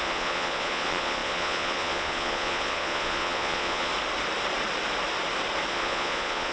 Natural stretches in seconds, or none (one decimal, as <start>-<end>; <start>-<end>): 3.9-5.7

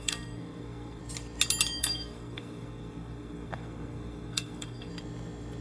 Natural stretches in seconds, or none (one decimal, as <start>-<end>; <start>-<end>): 1.0-1.8; 4.9-5.6

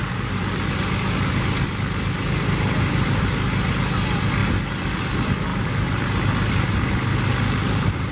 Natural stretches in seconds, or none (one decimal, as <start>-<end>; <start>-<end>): 0.0-8.1

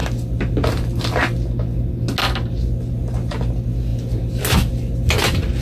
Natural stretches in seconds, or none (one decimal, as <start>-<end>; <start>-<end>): 0.0-5.6

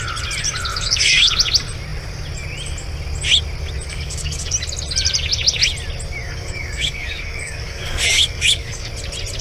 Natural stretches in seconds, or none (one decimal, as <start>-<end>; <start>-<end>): 0.0-0.7; 1.3-3.9; 4.5-6.2; 8.9-9.4

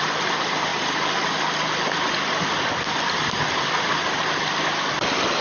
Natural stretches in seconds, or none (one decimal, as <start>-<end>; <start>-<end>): 0.0-5.4

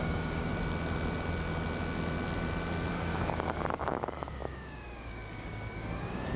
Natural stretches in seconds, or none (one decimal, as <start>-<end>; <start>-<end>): 0.5-2.9

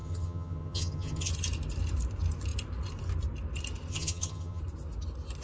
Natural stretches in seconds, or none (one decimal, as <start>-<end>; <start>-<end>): 1.3-3.9; 4.6-5.4